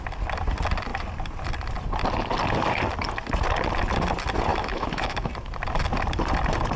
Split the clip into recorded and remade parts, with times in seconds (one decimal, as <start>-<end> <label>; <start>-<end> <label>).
0.0-4.5 recorded; 4.5-5.3 remade; 5.3-6.8 recorded